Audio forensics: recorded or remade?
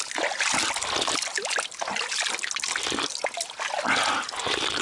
recorded